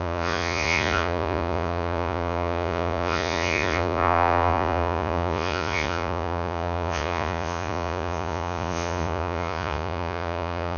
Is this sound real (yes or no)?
no